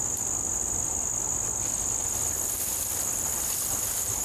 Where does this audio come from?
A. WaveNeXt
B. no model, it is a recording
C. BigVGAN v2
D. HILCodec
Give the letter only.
B